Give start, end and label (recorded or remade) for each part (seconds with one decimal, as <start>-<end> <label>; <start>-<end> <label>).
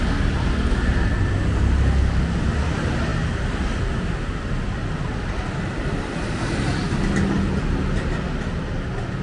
0.0-9.2 recorded